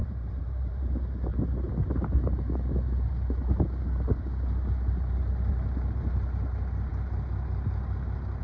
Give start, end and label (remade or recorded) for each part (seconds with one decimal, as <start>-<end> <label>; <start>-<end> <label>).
0.0-0.9 remade; 0.9-8.4 recorded